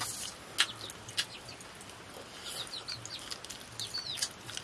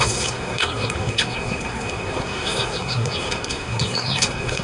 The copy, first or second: second